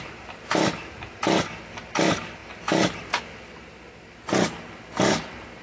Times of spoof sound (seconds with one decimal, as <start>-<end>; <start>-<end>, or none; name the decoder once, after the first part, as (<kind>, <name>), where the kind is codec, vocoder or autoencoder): none